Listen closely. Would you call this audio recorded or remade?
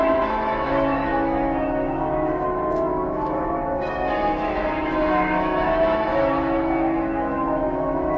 remade